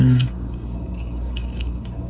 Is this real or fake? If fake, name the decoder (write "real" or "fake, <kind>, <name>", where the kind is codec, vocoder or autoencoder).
fake, codec, DAC